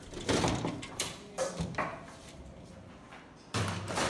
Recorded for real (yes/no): no